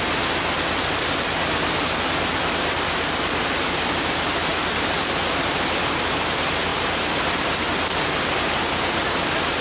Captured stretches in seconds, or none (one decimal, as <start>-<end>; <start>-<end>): 0.0-9.6